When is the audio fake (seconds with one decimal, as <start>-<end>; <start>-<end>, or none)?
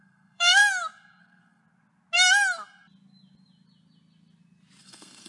0.0-0.6; 1.2-1.6; 4.8-5.3